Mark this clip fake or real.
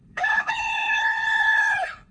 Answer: fake